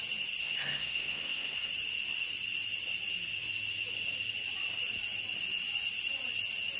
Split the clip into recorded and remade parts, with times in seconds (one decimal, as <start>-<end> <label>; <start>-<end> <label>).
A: 0.0-0.4 recorded; 0.4-1.7 remade; 1.7-6.8 recorded